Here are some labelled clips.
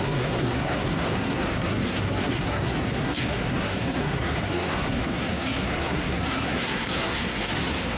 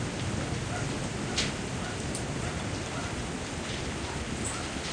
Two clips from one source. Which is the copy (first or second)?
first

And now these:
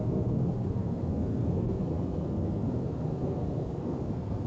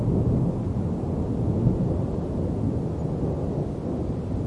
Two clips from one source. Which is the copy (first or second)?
first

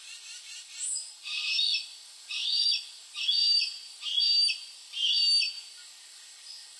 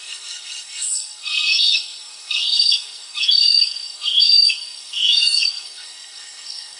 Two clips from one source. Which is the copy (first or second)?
second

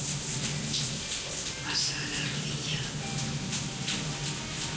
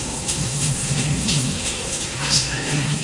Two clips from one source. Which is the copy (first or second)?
second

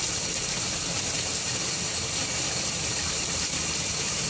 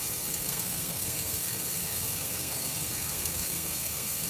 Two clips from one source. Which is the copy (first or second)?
second